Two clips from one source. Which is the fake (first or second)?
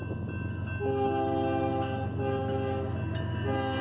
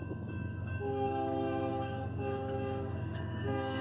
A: second